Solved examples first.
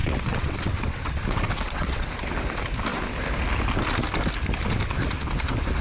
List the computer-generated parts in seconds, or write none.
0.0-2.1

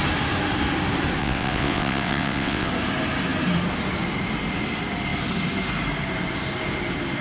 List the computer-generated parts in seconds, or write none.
1.2-2.7

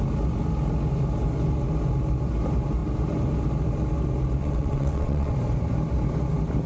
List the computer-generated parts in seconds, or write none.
4.4-5.3

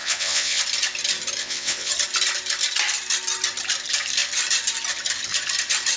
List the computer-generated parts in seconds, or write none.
0.0-0.6; 1.4-1.9

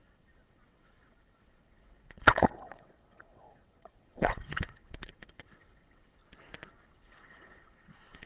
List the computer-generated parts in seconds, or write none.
0.0-6.2; 6.7-8.3

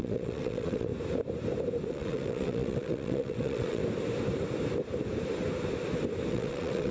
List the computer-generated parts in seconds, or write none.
0.0-0.9; 1.9-3.8; 6.3-6.9

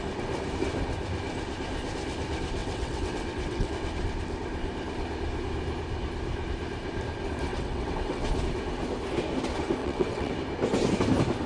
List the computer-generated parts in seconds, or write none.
2.6-3.7; 7.5-8.3; 9.8-10.3

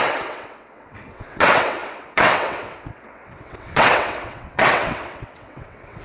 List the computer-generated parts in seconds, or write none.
0.0-6.0